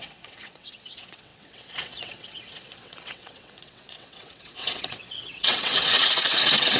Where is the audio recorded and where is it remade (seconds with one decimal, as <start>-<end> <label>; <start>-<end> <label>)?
0.0-6.8 remade